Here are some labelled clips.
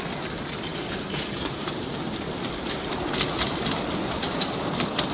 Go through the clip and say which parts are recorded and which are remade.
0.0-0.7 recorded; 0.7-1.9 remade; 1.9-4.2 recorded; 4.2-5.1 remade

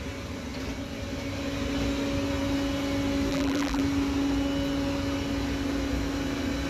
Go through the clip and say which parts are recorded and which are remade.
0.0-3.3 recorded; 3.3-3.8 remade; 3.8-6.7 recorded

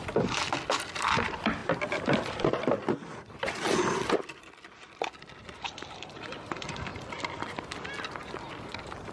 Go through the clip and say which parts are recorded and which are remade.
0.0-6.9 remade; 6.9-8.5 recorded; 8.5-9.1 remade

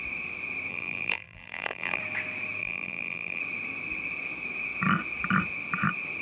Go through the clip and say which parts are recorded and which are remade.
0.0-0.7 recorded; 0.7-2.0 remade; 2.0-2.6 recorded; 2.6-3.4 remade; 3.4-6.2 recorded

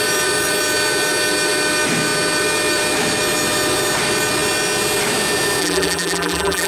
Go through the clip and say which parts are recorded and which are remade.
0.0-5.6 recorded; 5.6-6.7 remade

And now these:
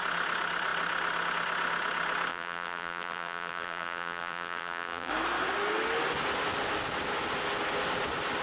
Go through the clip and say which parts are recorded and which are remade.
0.0-2.3 recorded; 2.3-5.1 remade; 5.1-8.4 recorded